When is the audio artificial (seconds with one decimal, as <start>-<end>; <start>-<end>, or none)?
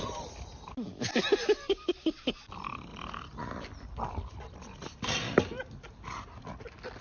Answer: 2.9-5.6